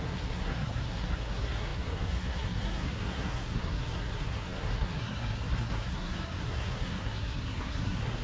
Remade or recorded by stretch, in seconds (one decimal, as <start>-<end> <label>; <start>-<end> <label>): 0.0-8.2 remade